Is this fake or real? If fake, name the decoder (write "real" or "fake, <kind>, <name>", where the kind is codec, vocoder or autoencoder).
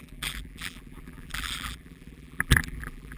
fake, vocoder, BigVGAN v2